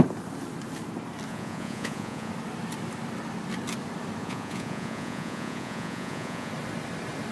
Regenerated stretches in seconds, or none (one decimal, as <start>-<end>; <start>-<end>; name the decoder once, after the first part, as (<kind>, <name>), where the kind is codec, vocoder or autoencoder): 1.3-2.3 (vocoder, Vocos); 4.2-6.5